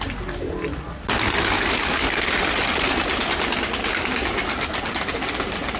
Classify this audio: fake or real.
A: real